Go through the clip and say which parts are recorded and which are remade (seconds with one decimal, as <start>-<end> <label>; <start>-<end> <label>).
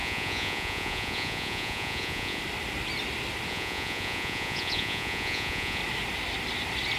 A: 0.0-2.4 remade; 2.4-3.5 recorded; 3.5-5.8 remade; 5.8-7.0 recorded